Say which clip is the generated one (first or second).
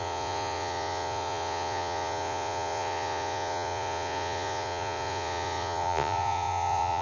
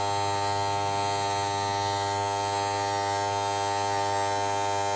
first